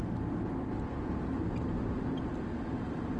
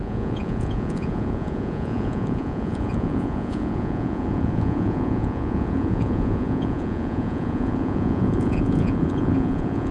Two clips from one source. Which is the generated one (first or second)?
second